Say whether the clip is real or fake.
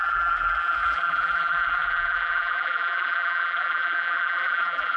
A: fake